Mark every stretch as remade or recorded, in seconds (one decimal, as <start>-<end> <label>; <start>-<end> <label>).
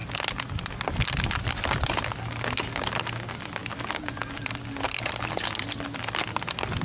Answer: 0.0-6.8 recorded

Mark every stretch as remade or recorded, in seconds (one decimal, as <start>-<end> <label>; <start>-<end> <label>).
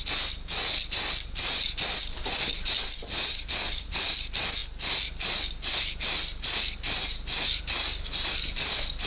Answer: 0.0-9.1 recorded